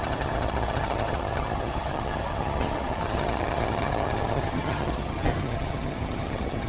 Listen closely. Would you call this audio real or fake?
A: fake